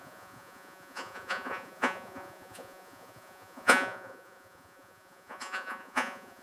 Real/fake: fake